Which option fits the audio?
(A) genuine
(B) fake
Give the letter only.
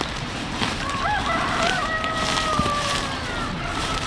B